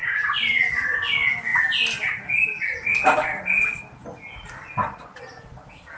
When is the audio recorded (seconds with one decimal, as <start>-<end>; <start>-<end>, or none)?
1.1-6.0